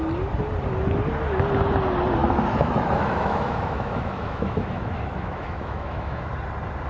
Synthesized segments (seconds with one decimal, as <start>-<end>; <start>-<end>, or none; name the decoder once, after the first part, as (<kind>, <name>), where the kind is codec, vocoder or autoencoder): 2.2-6.3 (autoencoder, DAC-VAE)